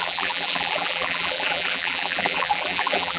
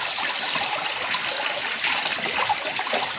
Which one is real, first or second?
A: second